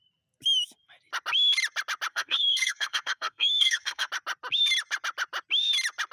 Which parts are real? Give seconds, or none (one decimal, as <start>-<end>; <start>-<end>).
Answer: 0.0-2.1; 4.1-6.1